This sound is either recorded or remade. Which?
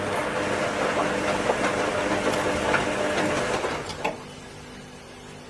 recorded